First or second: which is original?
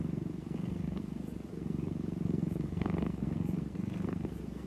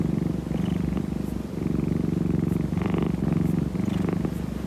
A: second